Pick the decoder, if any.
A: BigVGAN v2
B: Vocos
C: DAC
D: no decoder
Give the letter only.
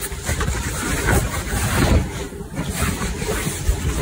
D